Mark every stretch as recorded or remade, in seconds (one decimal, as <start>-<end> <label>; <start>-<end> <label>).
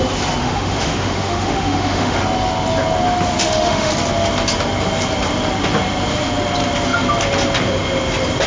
0.0-0.4 recorded; 0.4-2.2 remade; 2.2-3.4 recorded; 3.4-3.9 remade; 3.9-8.5 recorded